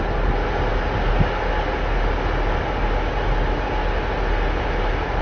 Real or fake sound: real